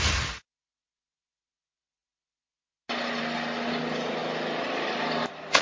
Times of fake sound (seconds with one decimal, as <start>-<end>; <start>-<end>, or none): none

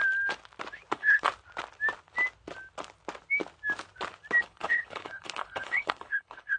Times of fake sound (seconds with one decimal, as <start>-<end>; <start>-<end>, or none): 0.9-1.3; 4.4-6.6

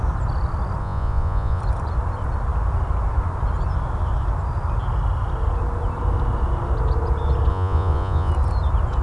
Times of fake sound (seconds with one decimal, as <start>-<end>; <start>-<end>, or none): 0.8-1.6; 7.5-8.3

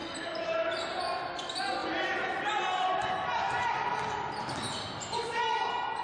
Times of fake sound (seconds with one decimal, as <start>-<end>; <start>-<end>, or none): none

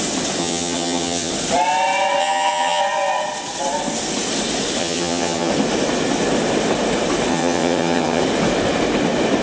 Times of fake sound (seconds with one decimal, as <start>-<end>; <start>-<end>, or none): 0.4-1.3; 2.2-2.8; 4.8-5.5; 7.3-8.2

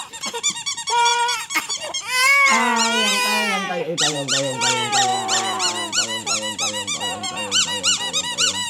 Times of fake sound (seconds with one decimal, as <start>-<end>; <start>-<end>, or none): 0.0-2.7; 3.7-5.1; 8.2-8.7